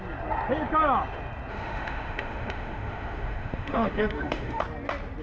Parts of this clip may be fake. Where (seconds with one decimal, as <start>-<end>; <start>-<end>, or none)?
1.5-4.6